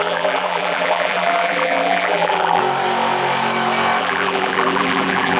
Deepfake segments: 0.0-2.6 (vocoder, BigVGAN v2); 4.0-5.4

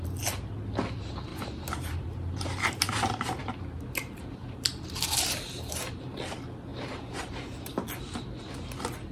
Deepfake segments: 1.3-3.4 (vocoder, BigVGAN v2); 4.4-6.0; 6.7-7.3